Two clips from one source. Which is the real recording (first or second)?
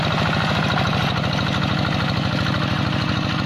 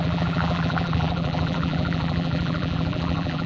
first